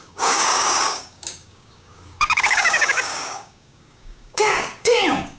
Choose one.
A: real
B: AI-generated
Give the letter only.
B